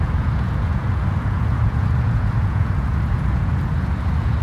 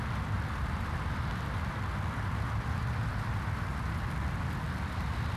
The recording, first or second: second